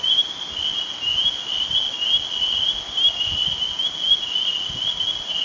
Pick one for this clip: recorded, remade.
recorded